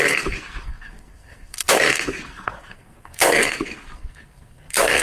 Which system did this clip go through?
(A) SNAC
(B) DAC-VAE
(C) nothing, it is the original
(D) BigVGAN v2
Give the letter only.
A